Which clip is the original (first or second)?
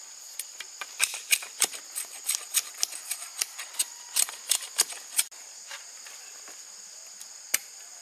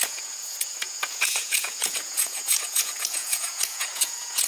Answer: first